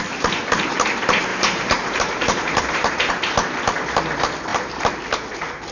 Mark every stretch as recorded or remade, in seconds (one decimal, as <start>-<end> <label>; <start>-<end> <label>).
0.0-1.3 recorded; 1.3-3.1 remade; 3.1-4.5 recorded; 4.5-5.0 remade; 5.0-5.7 recorded

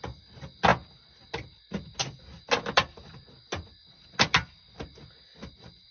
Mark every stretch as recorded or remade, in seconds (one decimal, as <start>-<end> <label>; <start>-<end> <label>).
0.0-5.9 recorded

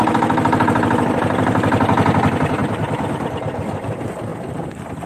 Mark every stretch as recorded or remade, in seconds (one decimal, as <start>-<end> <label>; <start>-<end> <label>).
0.0-5.1 recorded

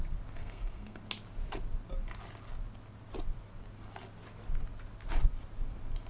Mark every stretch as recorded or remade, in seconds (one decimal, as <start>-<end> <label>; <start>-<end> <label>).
0.0-0.4 recorded; 0.4-1.0 remade; 1.0-6.1 recorded